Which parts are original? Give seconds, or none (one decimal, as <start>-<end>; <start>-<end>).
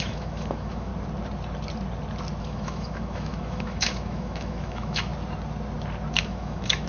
0.9-2.4; 5.1-6.2